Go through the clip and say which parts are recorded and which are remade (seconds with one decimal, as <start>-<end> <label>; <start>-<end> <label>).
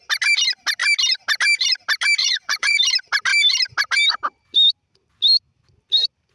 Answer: 0.0-2.2 recorded; 2.2-2.8 remade; 2.8-6.3 recorded